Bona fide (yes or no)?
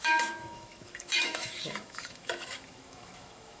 no